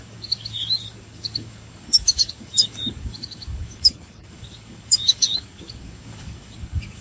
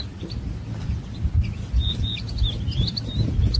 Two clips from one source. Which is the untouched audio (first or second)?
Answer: second